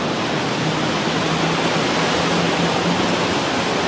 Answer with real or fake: real